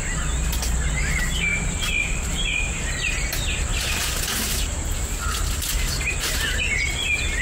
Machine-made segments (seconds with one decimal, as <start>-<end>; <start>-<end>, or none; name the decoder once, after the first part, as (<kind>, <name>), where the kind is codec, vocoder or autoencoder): 1.5-2.9 (vocoder, BigVGAN v2); 3.7-4.2